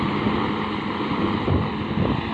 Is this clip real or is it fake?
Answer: real